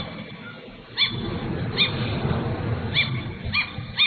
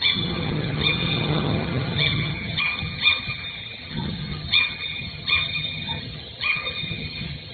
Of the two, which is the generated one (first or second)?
second